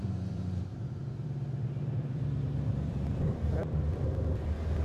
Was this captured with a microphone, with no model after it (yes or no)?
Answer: no